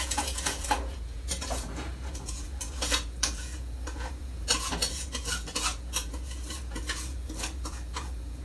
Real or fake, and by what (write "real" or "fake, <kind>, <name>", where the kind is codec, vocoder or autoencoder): fake, vocoder, Vocos